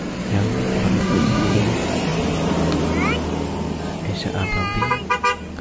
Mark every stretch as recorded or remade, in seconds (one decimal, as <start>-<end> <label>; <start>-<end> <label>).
0.0-1.0 recorded; 1.0-1.6 remade; 1.6-5.6 recorded